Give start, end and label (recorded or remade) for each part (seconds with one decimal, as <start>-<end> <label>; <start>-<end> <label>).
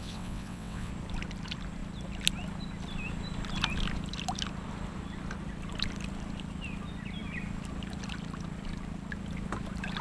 0.0-0.9 remade; 0.9-10.0 recorded